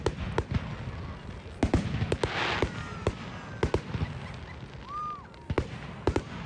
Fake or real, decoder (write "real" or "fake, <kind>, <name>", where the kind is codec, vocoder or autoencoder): real